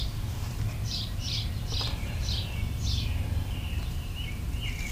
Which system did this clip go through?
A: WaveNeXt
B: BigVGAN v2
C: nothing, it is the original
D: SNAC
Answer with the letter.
B